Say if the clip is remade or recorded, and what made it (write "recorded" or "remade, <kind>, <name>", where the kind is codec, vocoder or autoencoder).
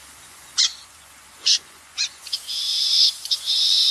remade, vocoder, Vocos